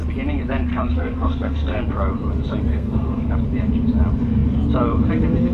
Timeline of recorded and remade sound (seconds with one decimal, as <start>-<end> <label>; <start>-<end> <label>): 0.0-0.7 recorded; 0.7-1.8 remade; 1.8-2.7 recorded; 2.7-3.3 remade; 3.3-5.5 recorded